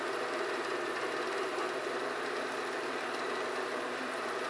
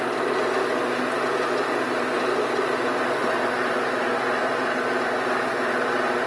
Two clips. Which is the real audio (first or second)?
second